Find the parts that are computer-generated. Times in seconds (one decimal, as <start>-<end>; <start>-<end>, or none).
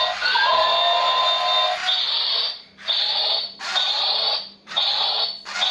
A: 1.8-5.2